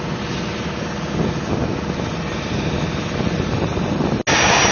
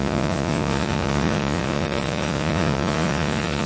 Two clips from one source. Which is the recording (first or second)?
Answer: first